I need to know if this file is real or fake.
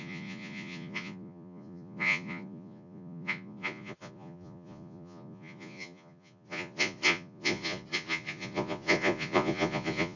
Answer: fake